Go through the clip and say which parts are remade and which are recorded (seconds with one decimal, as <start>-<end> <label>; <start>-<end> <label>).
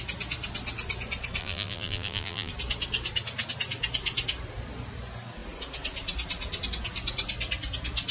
0.0-1.4 recorded; 1.4-2.5 remade; 2.5-8.1 recorded